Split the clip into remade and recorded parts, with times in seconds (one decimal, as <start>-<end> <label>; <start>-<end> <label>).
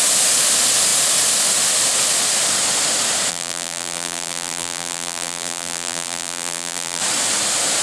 0.0-3.3 recorded; 3.3-7.0 remade; 7.0-7.8 recorded